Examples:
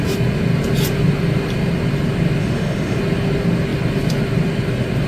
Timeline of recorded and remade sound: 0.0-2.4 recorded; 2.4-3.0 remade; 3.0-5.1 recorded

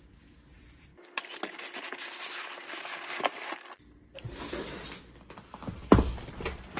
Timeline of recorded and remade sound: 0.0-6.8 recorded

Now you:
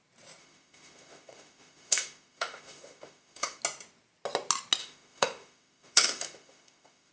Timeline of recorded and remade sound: 0.0-0.4 recorded; 0.4-3.6 remade; 3.6-4.8 recorded; 4.8-7.1 remade

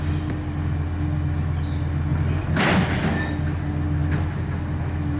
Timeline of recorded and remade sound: 0.0-5.2 recorded

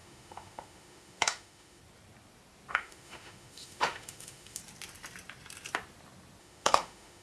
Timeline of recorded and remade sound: 0.0-1.8 remade; 1.8-2.7 recorded; 2.7-4.6 remade; 4.6-6.4 recorded; 6.4-7.2 remade

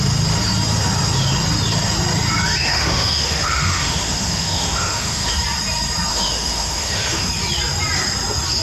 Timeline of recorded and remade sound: 0.0-2.6 recorded; 2.6-5.3 remade; 5.3-6.1 recorded; 6.1-7.3 remade; 7.3-8.6 recorded

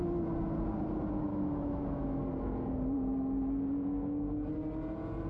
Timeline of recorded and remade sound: 0.0-1.3 recorded; 1.3-2.2 remade; 2.2-5.3 recorded

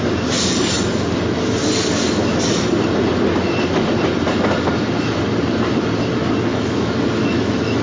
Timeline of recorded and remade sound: 0.0-6.5 recorded; 6.5-7.8 remade